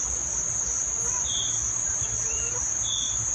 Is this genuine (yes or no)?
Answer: no